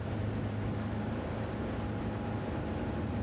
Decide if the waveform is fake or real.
real